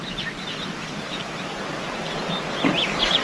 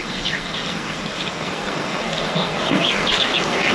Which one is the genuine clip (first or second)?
first